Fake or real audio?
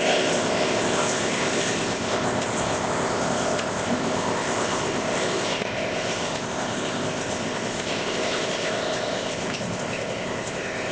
fake